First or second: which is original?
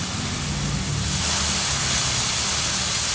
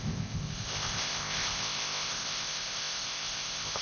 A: first